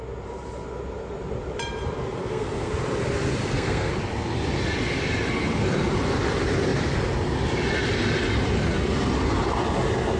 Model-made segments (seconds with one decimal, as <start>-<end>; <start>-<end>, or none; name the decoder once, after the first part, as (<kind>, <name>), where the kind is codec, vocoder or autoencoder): 2.2-2.7 (codec, SNAC); 3.4-3.9